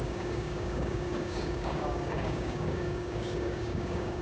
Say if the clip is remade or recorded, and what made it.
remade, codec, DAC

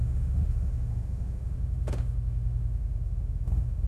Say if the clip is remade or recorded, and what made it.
remade, autoencoder, DAC-VAE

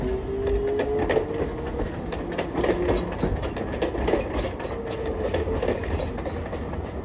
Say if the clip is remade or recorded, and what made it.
recorded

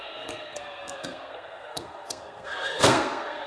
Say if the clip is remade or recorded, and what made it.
remade, codec, SNAC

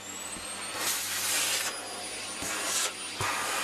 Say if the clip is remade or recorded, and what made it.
recorded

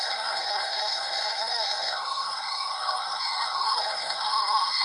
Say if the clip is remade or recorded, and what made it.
remade, codec, SNAC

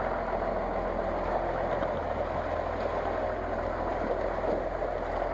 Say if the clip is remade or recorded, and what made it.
recorded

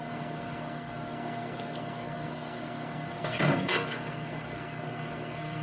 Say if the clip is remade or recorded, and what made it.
remade, codec, SNAC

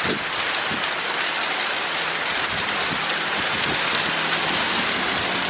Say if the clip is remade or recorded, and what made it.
recorded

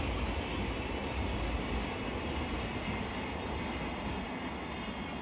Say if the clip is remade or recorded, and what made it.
recorded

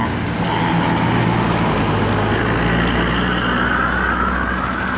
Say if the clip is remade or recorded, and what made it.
recorded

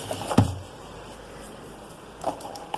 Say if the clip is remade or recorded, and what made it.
recorded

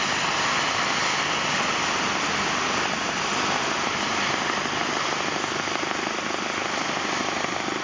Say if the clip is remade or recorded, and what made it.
recorded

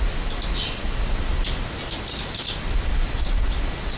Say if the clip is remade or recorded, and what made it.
recorded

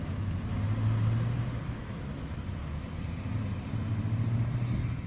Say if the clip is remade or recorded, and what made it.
recorded